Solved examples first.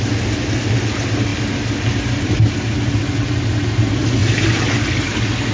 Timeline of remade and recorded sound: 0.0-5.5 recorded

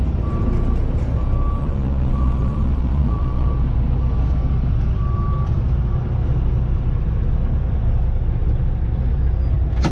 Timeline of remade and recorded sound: 0.0-1.6 recorded; 1.6-3.5 remade; 3.5-9.9 recorded

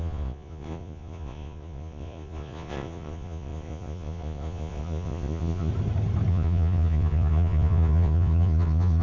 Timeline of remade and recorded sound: 0.0-5.7 remade; 5.7-6.3 recorded; 6.3-9.0 remade

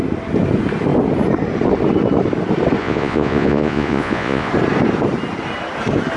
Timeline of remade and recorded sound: 0.0-2.8 recorded; 2.8-4.5 remade; 4.5-6.2 recorded

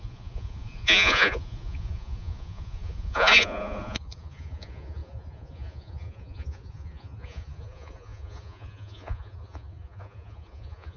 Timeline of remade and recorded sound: 0.0-11.0 remade

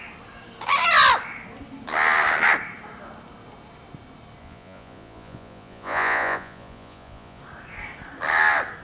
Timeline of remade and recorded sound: 0.0-4.4 recorded; 4.4-7.4 remade; 7.4-8.8 recorded

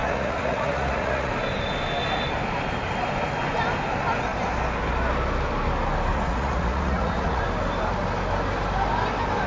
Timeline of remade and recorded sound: 0.0-1.3 remade; 1.3-6.1 recorded; 6.1-7.4 remade; 7.4-9.5 recorded

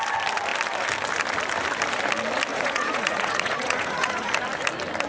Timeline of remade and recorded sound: 0.0-2.5 recorded; 2.5-4.3 remade; 4.3-5.1 recorded